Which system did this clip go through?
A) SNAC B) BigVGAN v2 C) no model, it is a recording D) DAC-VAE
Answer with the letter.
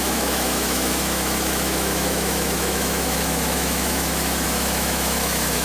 D